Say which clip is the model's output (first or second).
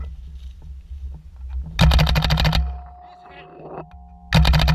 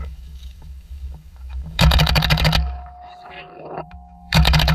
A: second